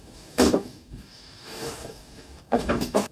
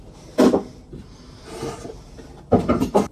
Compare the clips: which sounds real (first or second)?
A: second